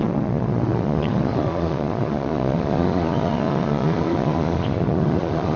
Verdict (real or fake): fake